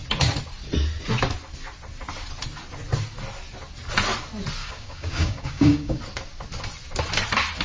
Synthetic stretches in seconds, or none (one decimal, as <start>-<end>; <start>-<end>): 4.6-6.0